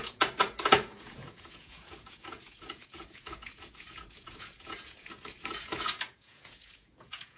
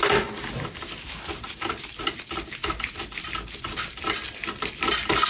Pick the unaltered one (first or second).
second